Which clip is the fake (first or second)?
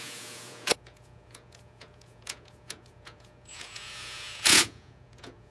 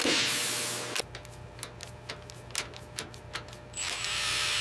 first